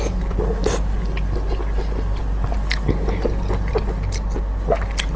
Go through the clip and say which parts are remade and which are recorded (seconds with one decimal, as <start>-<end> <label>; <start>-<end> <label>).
0.0-5.2 recorded